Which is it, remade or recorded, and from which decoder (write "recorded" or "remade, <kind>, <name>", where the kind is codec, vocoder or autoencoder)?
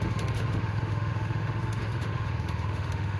remade, autoencoder, DAC-VAE